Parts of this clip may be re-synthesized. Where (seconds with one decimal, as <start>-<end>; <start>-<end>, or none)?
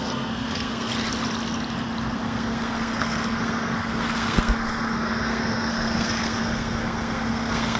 0.0-0.9; 2.1-7.8